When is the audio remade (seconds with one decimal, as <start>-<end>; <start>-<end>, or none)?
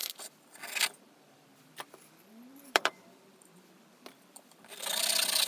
0.0-5.5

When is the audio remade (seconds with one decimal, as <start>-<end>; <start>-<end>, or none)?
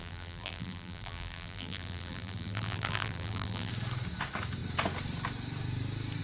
0.0-3.7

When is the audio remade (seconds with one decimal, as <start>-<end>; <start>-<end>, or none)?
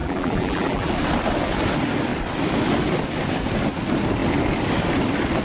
0.0-0.9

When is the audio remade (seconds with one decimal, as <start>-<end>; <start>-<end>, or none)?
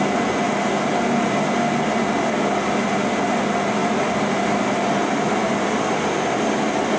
none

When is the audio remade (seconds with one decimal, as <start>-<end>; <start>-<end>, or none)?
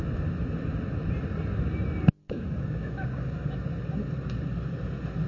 2.2-3.5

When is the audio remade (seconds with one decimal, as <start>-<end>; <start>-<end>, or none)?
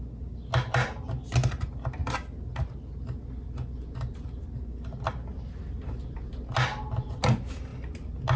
none